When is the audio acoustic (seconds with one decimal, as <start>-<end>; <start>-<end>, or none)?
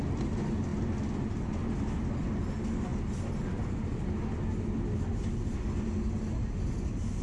0.0-7.2